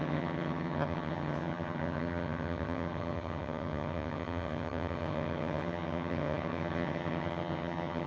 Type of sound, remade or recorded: remade